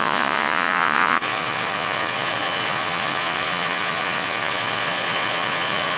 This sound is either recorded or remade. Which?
remade